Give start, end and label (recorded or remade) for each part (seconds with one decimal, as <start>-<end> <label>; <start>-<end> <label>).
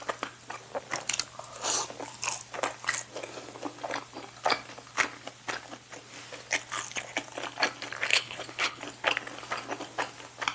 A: 0.0-8.1 recorded; 8.1-8.8 remade; 8.8-10.5 recorded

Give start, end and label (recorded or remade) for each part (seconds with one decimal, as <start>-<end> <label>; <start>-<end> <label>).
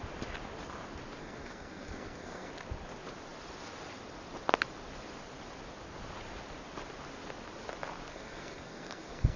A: 0.0-1.2 recorded; 1.2-2.5 remade; 2.5-8.1 recorded; 8.1-9.4 remade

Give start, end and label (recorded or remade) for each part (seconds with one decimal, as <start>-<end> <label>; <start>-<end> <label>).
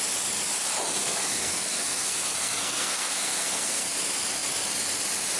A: 0.0-1.0 recorded; 1.0-3.9 remade; 3.9-5.4 recorded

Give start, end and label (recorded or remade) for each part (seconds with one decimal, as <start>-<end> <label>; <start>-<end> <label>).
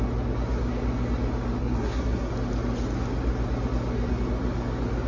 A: 0.0-1.6 recorded; 1.6-2.3 remade; 2.3-5.1 recorded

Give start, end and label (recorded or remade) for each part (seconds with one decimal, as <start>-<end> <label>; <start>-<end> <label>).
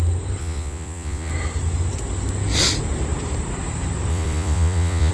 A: 0.0-0.4 recorded; 0.4-1.3 remade; 1.3-4.1 recorded; 4.1-5.1 remade